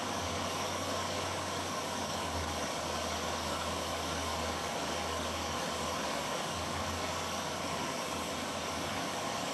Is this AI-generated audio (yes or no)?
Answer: yes